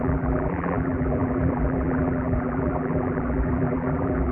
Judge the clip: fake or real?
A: fake